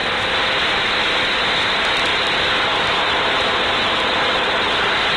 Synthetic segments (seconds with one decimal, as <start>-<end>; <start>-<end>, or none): none